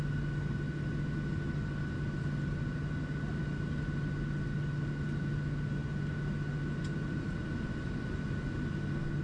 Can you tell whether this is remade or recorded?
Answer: recorded